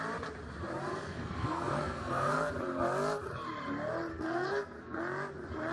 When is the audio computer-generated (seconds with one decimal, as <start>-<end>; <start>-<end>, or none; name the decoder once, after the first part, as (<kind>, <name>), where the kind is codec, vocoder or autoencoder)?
0.9-2.5 (codec, SNAC); 4.1-5.0